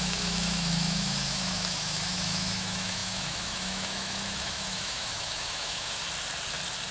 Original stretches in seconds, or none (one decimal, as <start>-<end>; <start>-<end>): 6.0-6.9